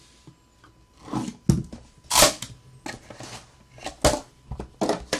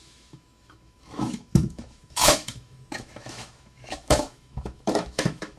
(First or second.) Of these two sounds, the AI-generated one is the second